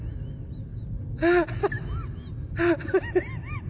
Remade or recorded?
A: recorded